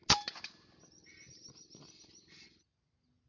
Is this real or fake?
real